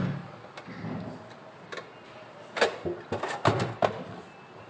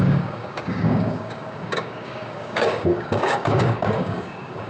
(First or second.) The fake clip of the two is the second